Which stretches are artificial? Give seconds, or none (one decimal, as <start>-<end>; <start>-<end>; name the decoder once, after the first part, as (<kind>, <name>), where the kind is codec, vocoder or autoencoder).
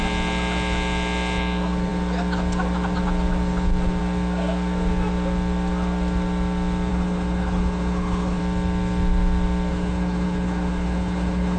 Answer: 6.9-8.4 (codec, HILCodec); 9.7-11.6